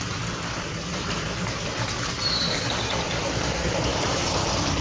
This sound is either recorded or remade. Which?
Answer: remade